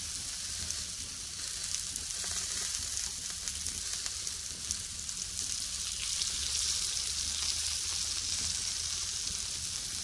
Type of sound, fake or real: real